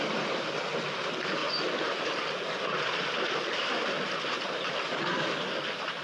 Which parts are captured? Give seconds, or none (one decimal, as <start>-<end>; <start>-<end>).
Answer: 0.0-6.0